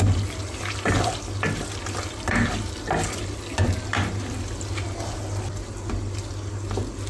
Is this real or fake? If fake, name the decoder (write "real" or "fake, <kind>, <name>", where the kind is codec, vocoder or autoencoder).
real